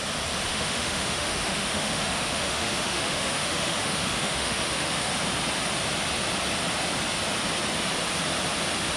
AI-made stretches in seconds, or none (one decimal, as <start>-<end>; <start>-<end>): 0.5-5.1